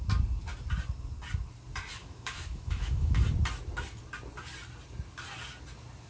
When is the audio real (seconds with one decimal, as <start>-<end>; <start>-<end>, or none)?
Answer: 0.0-2.0; 3.2-6.1